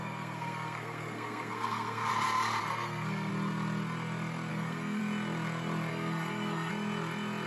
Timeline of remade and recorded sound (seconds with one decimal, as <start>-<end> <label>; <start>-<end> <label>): 0.0-2.1 remade; 2.1-2.6 recorded; 2.6-3.3 remade; 3.3-4.5 recorded; 4.5-5.0 remade; 5.0-5.9 recorded; 5.9-6.7 remade; 6.7-7.5 recorded